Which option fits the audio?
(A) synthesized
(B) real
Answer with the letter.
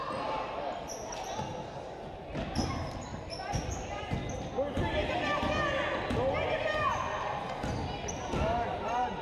B